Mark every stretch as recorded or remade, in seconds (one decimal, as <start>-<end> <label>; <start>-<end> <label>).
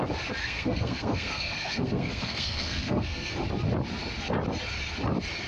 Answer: 0.0-0.4 recorded; 0.4-3.3 remade; 3.3-5.5 recorded